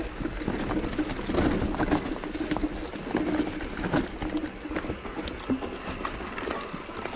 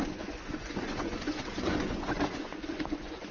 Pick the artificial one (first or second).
second